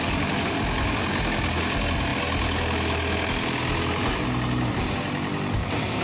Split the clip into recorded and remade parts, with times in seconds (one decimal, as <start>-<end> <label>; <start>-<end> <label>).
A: 0.0-6.0 recorded